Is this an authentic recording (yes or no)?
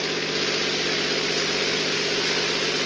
yes